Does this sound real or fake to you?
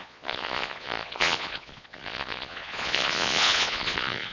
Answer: fake